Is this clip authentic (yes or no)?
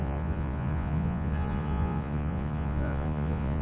no